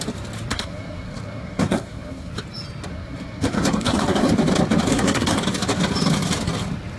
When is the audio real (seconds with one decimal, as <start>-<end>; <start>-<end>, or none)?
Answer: 0.0-0.5; 2.3-2.9; 4.3-4.9; 5.4-7.0